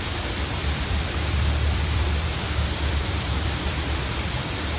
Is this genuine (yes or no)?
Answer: no